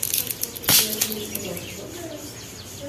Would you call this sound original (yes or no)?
yes